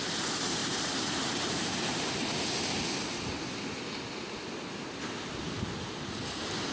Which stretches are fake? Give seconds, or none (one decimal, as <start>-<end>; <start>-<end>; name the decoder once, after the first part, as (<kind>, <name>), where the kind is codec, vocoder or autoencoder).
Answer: 0.6-2.2 (vocoder, BigVGAN v2)

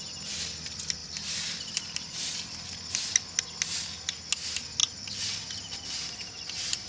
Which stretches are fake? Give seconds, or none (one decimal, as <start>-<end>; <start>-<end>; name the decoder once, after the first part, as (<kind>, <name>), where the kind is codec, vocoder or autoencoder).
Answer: 1.0-2.7 (vocoder, BigVGAN v2); 4.8-5.8

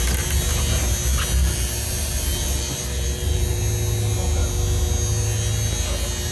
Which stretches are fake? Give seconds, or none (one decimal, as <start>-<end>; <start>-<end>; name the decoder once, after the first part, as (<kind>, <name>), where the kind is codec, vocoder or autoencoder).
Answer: 1.4-3.6 (vocoder, BigVGAN v2)

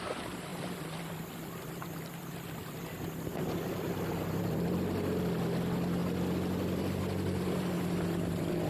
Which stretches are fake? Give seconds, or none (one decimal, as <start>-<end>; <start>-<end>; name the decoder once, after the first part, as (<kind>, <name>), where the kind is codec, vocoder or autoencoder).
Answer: none

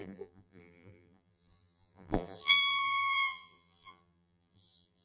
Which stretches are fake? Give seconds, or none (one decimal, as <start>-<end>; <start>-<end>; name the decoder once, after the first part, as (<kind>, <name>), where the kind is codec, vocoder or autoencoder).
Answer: 0.0-5.0 (vocoder, BigVGAN v2)